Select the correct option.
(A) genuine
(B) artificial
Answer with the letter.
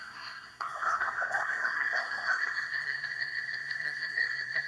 B